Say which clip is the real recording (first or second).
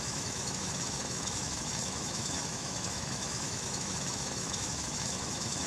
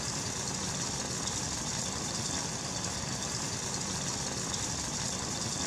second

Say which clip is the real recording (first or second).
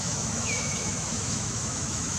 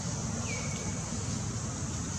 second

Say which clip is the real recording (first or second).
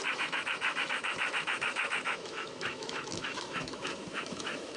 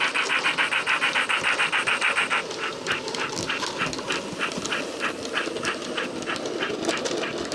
second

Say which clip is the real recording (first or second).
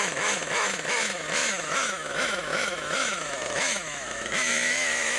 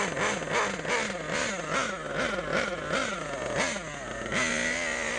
second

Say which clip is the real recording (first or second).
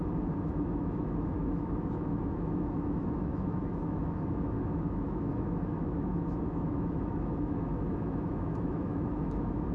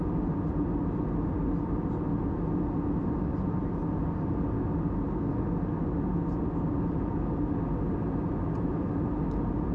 second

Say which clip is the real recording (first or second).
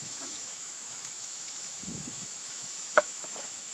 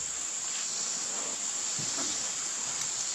second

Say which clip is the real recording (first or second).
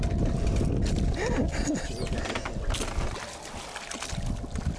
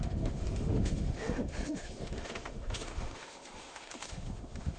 first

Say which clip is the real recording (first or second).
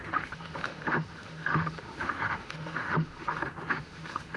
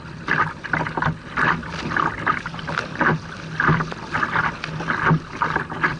second